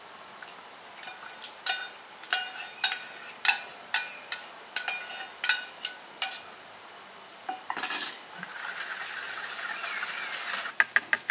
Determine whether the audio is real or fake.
real